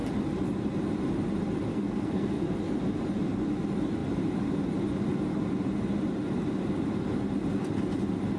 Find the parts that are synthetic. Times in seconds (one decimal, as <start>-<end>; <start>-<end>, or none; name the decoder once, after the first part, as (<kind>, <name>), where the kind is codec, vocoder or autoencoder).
1.7-2.6 (codec, SNAC)

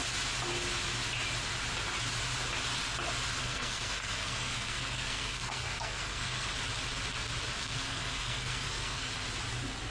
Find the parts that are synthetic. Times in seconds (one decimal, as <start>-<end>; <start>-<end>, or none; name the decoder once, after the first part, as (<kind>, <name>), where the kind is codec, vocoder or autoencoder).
3.4-6.5 (codec, SNAC); 7.6-9.1

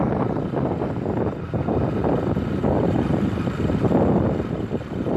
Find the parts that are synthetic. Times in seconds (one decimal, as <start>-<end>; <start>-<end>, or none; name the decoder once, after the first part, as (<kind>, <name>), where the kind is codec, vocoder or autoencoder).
none

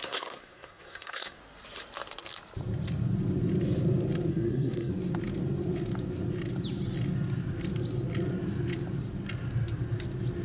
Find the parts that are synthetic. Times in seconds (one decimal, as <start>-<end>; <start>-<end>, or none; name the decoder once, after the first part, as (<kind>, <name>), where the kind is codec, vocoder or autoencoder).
0.0-1.4 (codec, SNAC); 4.3-4.9

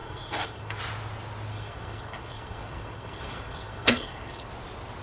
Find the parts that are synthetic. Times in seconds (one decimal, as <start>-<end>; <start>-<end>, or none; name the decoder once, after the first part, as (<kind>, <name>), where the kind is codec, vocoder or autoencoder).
0.0-0.8 (codec, SNAC); 1.5-4.5